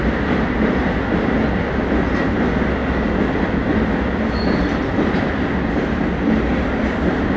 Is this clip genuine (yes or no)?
yes